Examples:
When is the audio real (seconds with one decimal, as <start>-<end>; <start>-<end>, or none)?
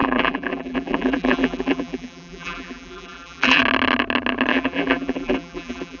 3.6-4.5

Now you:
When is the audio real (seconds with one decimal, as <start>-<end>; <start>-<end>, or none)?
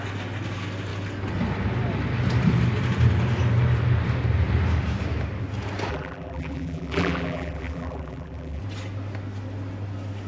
0.0-5.9; 8.6-10.3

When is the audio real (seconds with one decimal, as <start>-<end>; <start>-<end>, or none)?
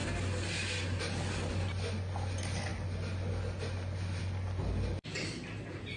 0.0-6.0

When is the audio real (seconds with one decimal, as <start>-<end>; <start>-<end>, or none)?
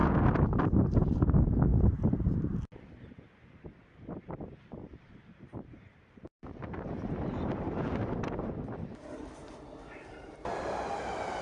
1.7-4.2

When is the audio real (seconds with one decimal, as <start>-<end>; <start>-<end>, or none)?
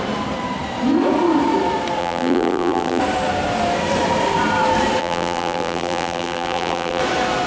0.0-2.0; 3.0-5.0; 7.0-7.5